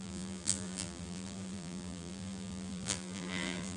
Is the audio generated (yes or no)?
yes